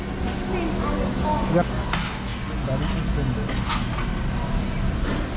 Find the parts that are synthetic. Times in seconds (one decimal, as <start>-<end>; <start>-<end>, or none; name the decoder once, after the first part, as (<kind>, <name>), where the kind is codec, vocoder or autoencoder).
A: none